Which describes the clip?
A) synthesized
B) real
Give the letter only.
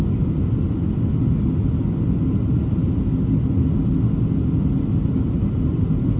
B